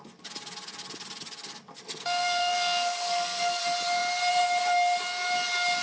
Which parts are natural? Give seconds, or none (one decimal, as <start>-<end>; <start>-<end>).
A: 0.0-1.8; 3.6-5.8